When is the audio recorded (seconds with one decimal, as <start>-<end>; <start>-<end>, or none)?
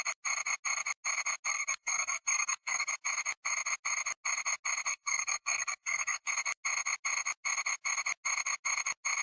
0.0-1.5; 2.9-4.9; 6.3-9.2